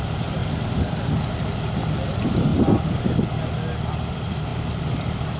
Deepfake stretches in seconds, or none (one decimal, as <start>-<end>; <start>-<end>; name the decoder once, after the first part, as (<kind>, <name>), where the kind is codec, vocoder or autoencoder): none